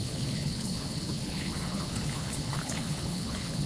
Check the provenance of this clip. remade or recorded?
remade